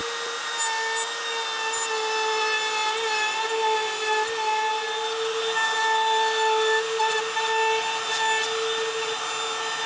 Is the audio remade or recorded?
recorded